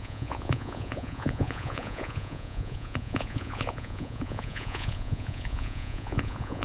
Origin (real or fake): fake